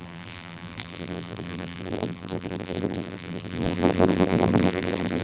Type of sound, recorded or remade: remade